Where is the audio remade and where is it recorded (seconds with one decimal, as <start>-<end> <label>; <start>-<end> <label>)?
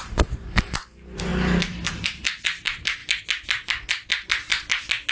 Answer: 0.0-1.3 remade; 1.3-1.9 recorded; 1.9-3.0 remade; 3.0-5.1 recorded